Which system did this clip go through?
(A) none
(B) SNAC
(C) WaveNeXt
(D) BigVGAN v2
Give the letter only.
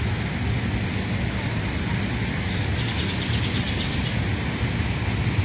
A